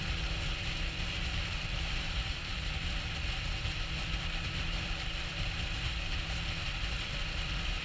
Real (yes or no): no